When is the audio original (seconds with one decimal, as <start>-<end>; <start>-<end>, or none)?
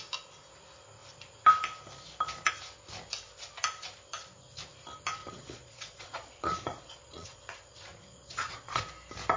0.0-5.2; 8.8-9.4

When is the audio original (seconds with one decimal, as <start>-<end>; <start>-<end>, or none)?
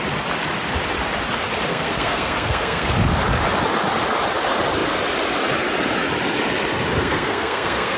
0.0-1.7; 2.9-7.0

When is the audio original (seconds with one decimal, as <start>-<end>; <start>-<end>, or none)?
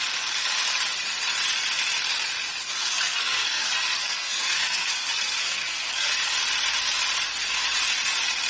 0.0-2.6; 6.1-8.5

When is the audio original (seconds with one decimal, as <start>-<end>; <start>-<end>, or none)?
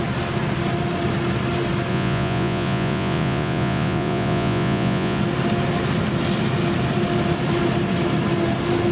0.0-1.9; 5.2-8.9